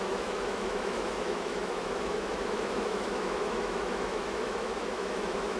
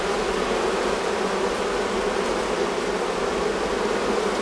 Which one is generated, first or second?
first